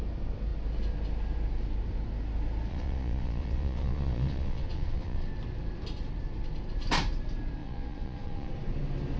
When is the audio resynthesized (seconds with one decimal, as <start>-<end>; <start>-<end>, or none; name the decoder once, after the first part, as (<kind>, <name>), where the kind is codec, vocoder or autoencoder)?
2.7-5.3 (vocoder, Vocos); 7.6-8.5